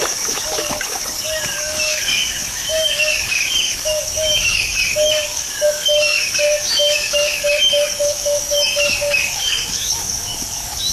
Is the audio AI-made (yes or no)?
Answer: yes